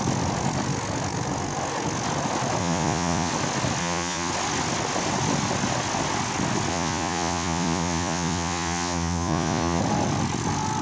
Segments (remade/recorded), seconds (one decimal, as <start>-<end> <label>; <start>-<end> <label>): 0.0-2.6 recorded; 2.6-3.3 remade; 3.3-3.8 recorded; 3.8-4.3 remade; 4.3-6.7 recorded; 6.7-9.8 remade; 9.8-10.8 recorded